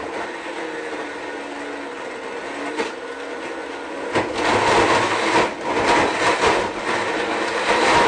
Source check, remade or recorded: recorded